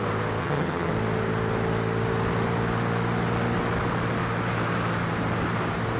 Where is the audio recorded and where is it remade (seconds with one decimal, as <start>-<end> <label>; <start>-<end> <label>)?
0.0-0.4 recorded; 0.4-0.9 remade; 0.9-6.0 recorded